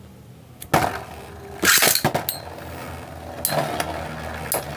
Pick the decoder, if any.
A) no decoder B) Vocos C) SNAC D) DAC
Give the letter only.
A